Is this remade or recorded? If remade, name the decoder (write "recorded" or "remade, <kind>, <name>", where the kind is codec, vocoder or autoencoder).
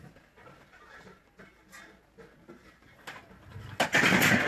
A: recorded